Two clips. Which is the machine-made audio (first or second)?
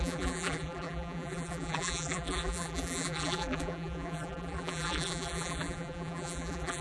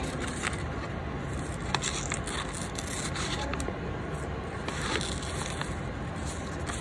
first